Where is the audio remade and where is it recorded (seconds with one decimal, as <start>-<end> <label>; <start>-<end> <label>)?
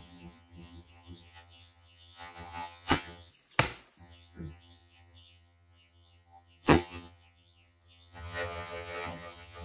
0.0-3.3 remade; 3.3-4.0 recorded; 4.0-9.6 remade